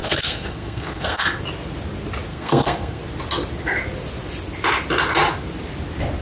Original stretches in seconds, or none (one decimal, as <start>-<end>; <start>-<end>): 1.4-2.3; 3.0-6.2